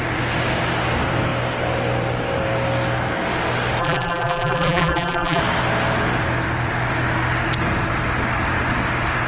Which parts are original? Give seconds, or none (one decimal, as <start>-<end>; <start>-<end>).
0.0-3.8; 5.4-9.3